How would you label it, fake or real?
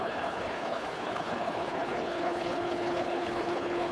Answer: fake